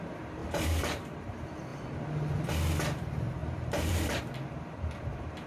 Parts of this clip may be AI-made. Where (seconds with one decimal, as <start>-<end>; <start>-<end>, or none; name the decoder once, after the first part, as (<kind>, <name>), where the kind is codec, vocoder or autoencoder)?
0.4-1.2 (vocoder, BigVGAN v2); 3.4-4.2